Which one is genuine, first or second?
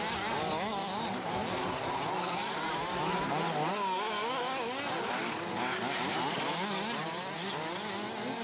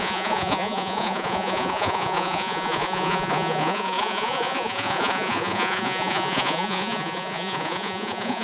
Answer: first